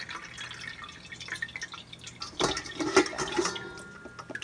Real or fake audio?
real